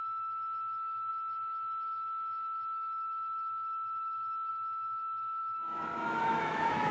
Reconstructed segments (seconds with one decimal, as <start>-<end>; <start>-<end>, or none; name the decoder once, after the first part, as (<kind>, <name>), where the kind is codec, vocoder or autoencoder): 0.0-6.9 (autoencoder, DAC-VAE)